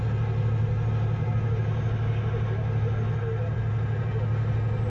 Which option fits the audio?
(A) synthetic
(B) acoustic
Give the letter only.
B